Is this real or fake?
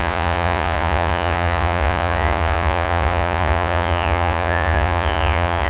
fake